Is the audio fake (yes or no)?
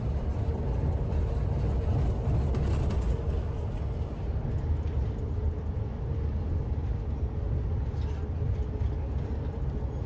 no